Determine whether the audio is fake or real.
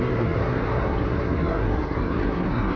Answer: fake